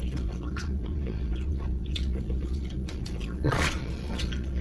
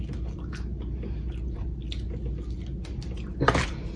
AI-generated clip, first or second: first